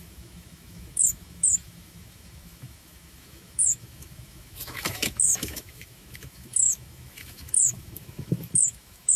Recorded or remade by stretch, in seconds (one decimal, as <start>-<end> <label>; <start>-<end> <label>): 0.0-9.2 remade